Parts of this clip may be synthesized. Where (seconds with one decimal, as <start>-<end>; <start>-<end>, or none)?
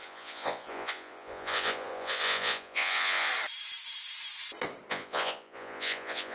0.0-3.3; 4.9-6.3